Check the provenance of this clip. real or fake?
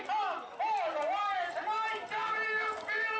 real